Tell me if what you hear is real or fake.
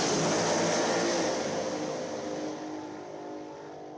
real